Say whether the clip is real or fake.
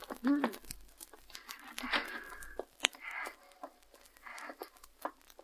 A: real